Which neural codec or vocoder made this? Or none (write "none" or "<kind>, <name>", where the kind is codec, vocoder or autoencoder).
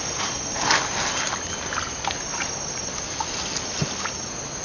none